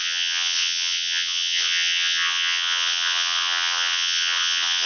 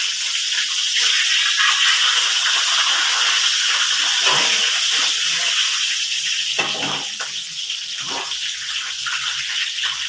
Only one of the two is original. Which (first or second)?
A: second